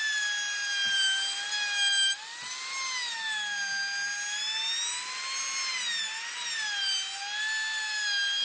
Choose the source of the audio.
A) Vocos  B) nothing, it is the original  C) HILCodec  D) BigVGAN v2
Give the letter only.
B